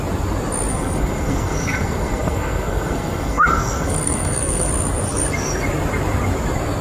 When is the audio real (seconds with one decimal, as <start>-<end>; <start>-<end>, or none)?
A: 0.0-0.7; 4.7-6.8